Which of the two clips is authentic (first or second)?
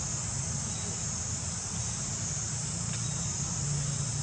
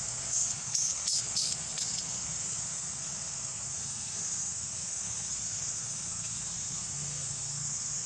first